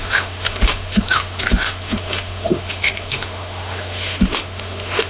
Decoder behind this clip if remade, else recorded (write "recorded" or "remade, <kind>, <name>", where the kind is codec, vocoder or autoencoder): remade, autoencoder, DAC-VAE